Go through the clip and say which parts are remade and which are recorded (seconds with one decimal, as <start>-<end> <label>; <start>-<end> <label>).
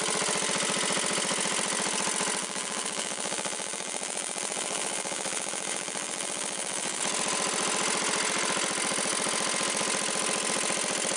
0.0-2.4 recorded; 2.4-7.0 remade; 7.0-11.2 recorded